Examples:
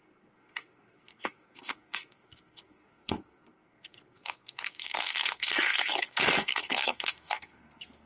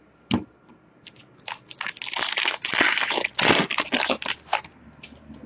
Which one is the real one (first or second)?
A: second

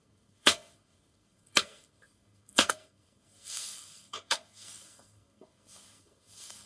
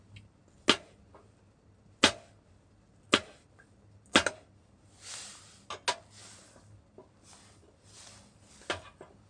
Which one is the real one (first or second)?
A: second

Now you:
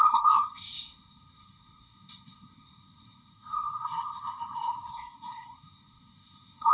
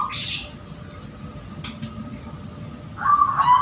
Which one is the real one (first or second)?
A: second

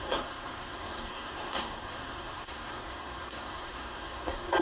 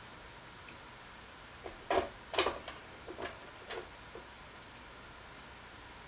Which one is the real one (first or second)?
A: second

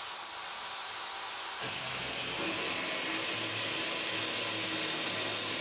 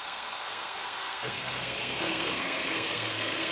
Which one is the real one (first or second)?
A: first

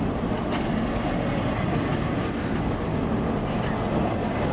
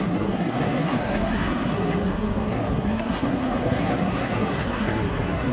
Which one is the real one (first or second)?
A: first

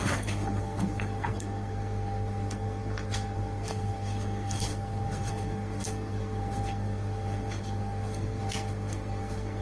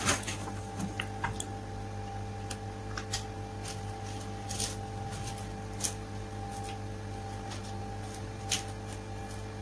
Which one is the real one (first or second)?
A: second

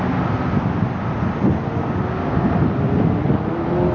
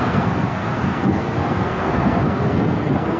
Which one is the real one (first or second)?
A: first